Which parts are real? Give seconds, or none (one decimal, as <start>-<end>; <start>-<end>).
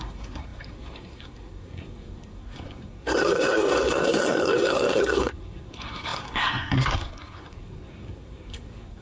none